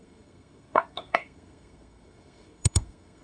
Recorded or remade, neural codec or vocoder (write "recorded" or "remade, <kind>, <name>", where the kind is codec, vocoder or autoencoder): remade, codec, SNAC